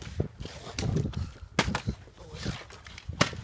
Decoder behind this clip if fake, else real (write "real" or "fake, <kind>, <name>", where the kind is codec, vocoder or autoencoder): real